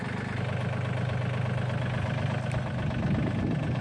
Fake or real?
real